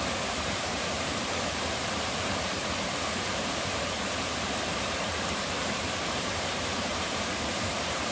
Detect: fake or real fake